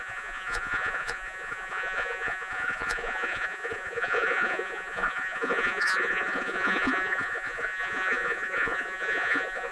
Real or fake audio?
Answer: fake